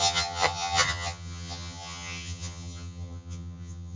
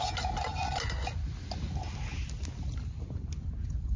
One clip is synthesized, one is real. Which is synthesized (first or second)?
first